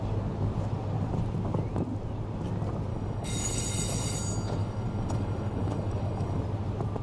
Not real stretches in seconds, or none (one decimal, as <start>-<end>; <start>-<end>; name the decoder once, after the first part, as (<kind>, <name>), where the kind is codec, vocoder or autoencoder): 2.9-3.6 (codec, DAC); 4.6-6.4